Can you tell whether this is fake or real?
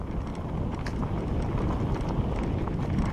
real